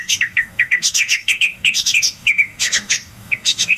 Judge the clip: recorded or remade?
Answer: remade